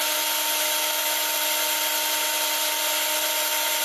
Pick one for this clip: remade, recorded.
recorded